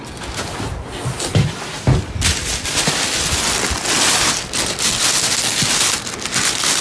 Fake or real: real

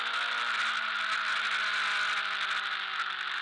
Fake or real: real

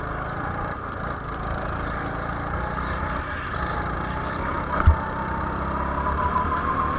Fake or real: real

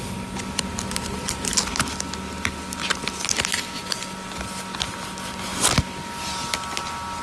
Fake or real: real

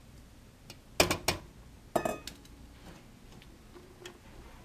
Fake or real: real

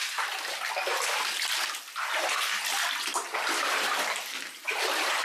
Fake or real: real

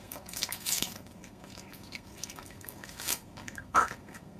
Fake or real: fake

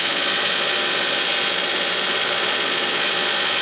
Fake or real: fake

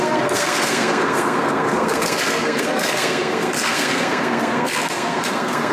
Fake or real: fake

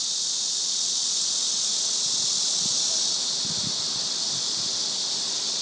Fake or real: real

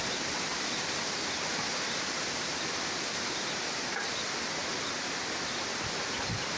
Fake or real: real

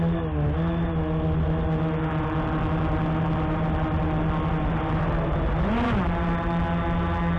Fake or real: real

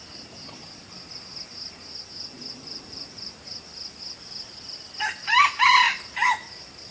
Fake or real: real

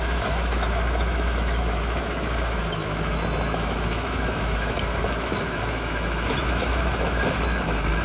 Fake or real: fake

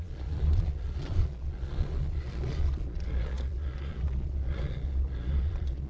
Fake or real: fake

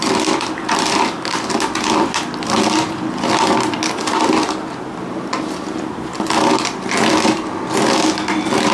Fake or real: real